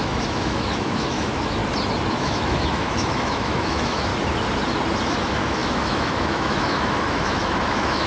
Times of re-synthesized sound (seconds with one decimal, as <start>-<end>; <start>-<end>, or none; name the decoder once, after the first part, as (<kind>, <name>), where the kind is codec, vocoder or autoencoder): 0.0-1.6 (autoencoder, DAC-VAE); 2.1-4.1; 5.0-8.1